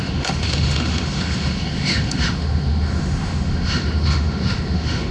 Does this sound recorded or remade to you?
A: remade